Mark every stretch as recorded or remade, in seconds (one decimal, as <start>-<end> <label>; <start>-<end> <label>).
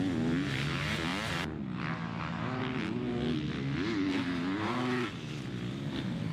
0.0-6.3 recorded